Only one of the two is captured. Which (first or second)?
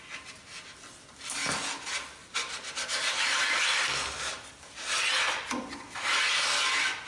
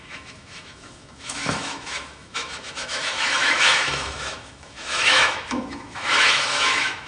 first